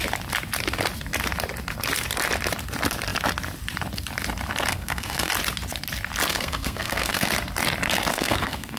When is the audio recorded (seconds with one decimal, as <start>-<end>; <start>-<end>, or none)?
0.0-4.7; 5.3-6.3; 7.3-8.1